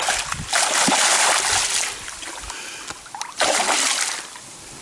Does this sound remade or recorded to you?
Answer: recorded